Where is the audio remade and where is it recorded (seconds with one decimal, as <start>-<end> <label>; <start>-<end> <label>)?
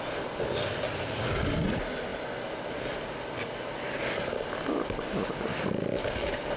0.0-6.6 recorded